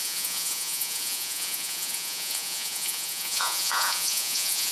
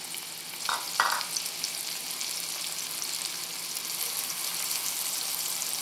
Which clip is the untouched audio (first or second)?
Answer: second